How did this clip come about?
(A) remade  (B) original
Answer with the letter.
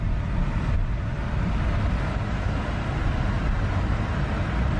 B